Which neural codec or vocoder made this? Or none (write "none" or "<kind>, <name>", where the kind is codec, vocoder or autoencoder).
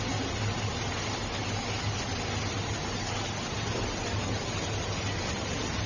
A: none